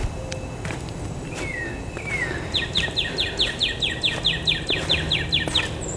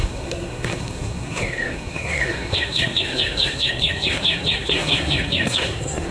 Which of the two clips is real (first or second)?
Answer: first